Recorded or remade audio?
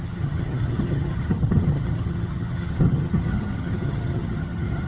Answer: remade